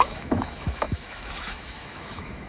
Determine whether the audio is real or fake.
fake